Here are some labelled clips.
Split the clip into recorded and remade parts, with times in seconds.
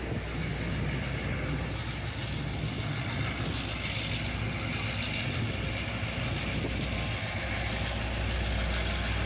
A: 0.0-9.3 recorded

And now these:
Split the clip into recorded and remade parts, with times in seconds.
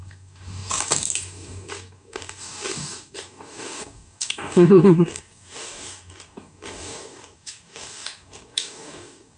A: 0.0-9.4 remade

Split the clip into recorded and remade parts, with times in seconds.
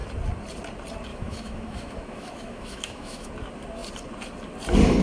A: 0.0-1.1 recorded; 1.1-3.3 remade; 3.3-5.0 recorded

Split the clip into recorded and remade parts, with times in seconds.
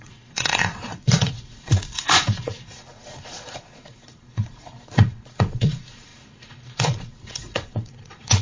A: 0.0-8.4 remade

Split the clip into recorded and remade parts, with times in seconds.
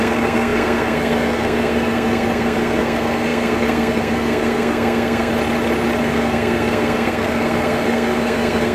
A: 0.0-5.3 remade; 5.3-6.0 recorded; 6.0-8.7 remade